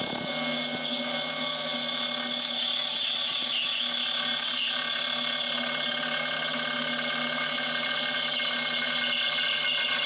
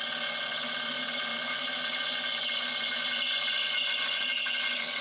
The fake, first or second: second